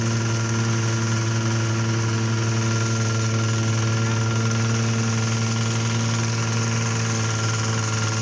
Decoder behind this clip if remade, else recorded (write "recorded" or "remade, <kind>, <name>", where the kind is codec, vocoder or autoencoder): recorded